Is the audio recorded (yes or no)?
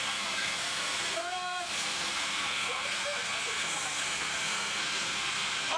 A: no